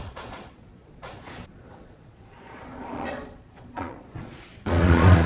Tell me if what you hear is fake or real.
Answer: fake